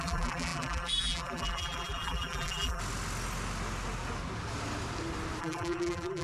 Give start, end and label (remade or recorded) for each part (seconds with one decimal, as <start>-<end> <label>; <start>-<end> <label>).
0.0-2.8 remade; 2.8-5.4 recorded; 5.4-6.2 remade